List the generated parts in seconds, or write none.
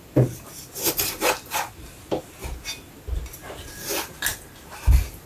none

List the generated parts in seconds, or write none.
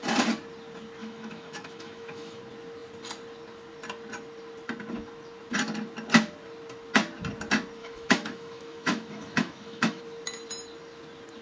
1.0-2.4 (autoencoder, DAC-VAE); 7.8-10.0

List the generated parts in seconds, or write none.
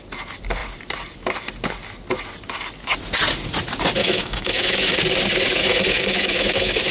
4.0-5.0 (autoencoder, DAC-VAE); 5.6-6.9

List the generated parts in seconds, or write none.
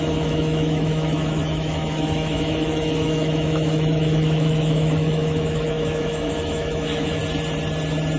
0.0-7.2 (autoencoder, DAC-VAE)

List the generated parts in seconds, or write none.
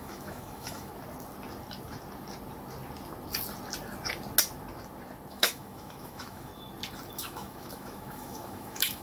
0.0-0.9 (autoencoder, DAC-VAE); 5.3-6.5; 7.1-9.0